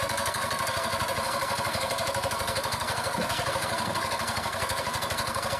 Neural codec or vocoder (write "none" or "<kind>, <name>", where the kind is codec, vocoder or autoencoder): codec, SNAC